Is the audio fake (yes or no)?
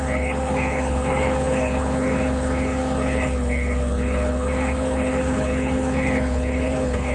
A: yes